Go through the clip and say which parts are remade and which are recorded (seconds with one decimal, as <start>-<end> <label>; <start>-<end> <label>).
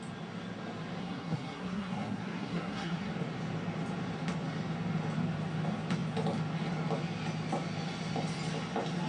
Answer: 0.0-1.0 recorded; 1.0-3.1 remade; 3.1-9.1 recorded